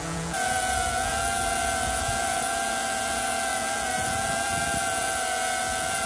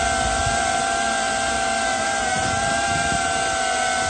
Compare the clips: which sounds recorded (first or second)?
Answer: second